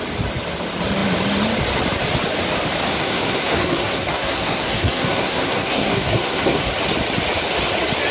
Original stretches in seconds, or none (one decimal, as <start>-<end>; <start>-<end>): 0.0-2.9; 6.7-8.1